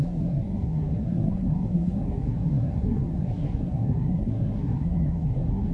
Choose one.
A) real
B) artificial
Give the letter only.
B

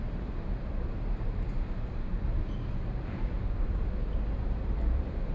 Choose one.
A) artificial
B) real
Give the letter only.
A